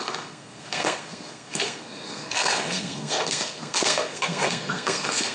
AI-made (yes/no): yes